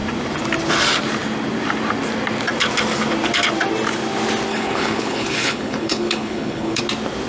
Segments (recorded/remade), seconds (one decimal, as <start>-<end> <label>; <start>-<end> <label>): 0.0-4.5 recorded; 4.5-6.8 remade; 6.8-7.3 recorded